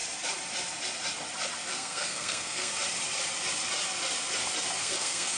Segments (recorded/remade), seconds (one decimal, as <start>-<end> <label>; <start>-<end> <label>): 0.0-1.7 recorded; 1.7-2.7 remade; 2.7-4.8 recorded; 4.8-5.4 remade

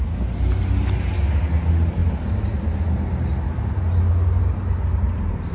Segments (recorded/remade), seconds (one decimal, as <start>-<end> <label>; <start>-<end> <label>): 0.0-5.5 recorded

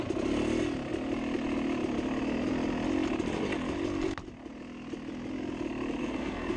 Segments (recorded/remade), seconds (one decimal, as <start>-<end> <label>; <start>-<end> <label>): 0.0-6.0 recorded; 6.0-6.6 remade

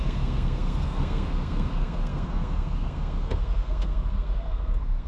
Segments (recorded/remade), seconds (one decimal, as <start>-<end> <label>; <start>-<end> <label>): 0.0-5.1 remade